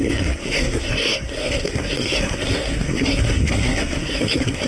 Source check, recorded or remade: remade